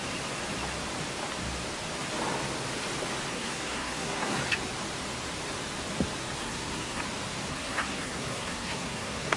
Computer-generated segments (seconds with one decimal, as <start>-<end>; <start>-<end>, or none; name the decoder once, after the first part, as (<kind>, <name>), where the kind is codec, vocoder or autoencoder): 3.3-4.4 (codec, SNAC); 6.4-7.0; 7.5-9.4